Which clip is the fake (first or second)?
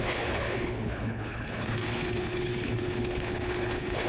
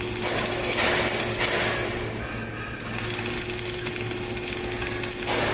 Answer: first